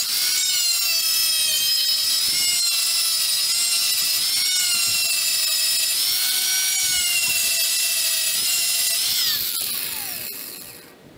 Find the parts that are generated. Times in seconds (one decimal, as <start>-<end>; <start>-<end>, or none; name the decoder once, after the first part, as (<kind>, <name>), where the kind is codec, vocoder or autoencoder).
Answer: none